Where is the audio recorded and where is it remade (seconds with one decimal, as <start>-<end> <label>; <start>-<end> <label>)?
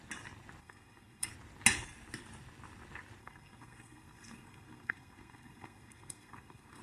0.0-0.6 recorded; 0.6-1.3 remade; 1.3-3.2 recorded; 3.2-6.8 remade